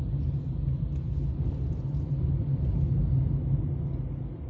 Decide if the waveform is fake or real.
real